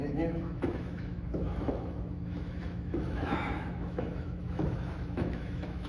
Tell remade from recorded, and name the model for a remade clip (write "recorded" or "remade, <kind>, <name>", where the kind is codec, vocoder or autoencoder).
remade, autoencoder, DAC-VAE